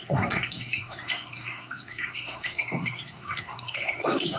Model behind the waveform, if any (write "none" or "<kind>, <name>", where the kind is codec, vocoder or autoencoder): codec, SNAC